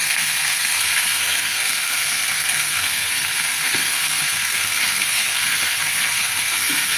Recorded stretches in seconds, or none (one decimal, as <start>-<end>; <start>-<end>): none